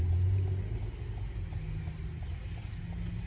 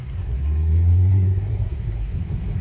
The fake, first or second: second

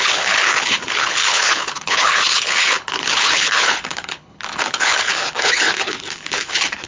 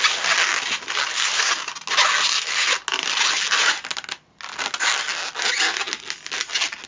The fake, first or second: first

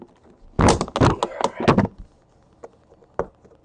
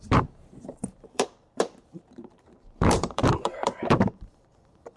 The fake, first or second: second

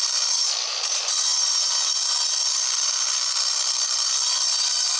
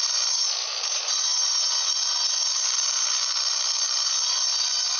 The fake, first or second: first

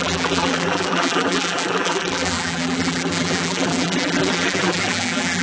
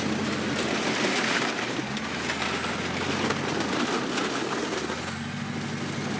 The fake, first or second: first